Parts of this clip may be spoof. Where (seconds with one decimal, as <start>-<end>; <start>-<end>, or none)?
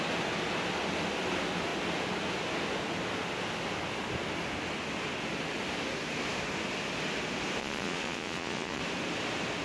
7.6-8.8